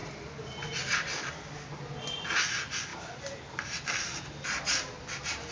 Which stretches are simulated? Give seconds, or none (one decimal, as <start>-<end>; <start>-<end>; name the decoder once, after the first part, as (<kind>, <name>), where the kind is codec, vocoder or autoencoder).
none